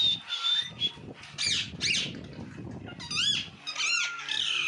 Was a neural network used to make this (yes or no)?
no